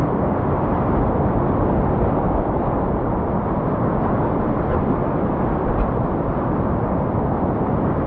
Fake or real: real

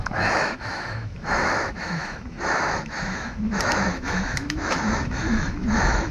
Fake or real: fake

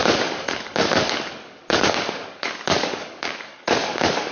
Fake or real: fake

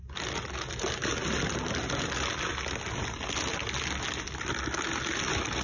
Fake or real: real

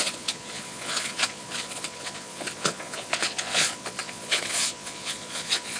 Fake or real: fake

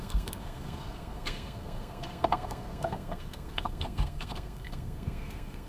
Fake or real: fake